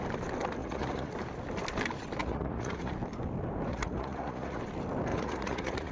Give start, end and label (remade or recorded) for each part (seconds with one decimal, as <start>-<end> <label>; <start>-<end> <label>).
0.0-0.6 recorded; 0.6-1.1 remade; 1.1-2.2 recorded; 2.2-2.9 remade; 2.9-3.7 recorded; 3.7-4.6 remade; 4.6-5.1 recorded; 5.1-5.9 remade